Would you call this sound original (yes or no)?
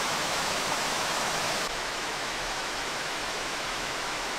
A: no